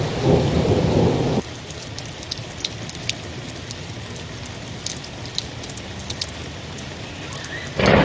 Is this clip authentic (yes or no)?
yes